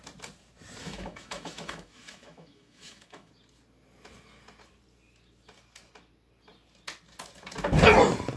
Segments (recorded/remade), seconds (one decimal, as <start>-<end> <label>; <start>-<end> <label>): 0.0-0.8 recorded; 0.8-3.3 remade; 3.3-8.4 recorded